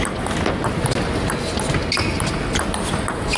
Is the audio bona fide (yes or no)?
yes